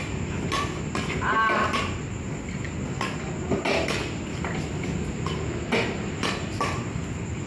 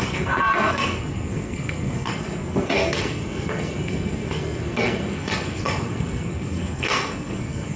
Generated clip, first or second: second